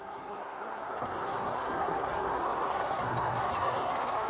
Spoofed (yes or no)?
yes